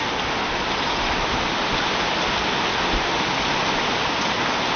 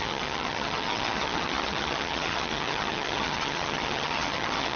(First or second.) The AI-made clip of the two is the second